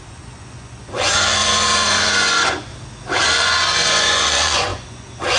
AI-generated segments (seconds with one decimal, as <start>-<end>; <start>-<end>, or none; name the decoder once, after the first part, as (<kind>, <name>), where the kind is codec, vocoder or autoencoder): 0.0-2.7 (vocoder, Vocos); 3.2-5.4